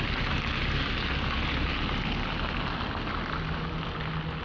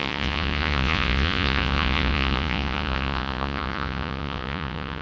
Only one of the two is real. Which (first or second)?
first